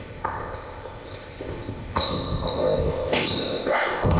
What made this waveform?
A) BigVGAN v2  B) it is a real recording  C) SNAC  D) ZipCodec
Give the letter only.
D